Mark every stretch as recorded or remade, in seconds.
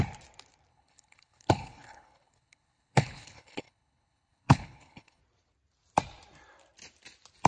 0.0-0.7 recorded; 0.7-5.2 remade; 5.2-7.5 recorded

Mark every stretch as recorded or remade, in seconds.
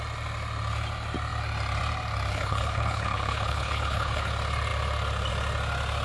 0.0-2.3 recorded; 2.3-4.3 remade; 4.3-6.0 recorded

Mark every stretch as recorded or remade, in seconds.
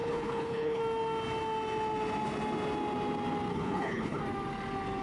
0.0-0.8 remade; 0.8-3.5 recorded; 3.5-4.2 remade; 4.2-5.0 recorded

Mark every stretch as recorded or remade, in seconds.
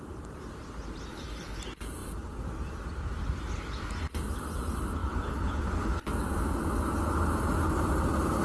0.0-1.1 recorded; 1.1-1.6 remade; 1.6-5.0 recorded; 5.0-6.1 remade; 6.1-8.4 recorded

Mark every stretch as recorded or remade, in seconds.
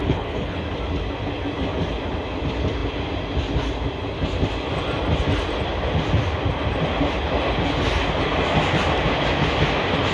0.0-0.6 remade; 0.6-10.1 recorded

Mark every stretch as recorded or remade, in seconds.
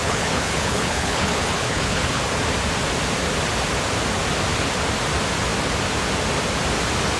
0.0-2.2 remade; 2.2-7.2 recorded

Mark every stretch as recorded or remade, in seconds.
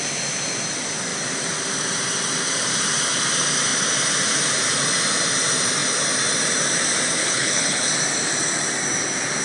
0.0-7.2 recorded; 7.2-7.9 remade; 7.9-9.4 recorded